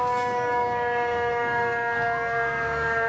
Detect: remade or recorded remade